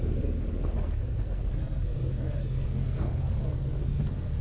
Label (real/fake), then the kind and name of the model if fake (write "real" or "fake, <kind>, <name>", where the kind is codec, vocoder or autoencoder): fake, codec, SNAC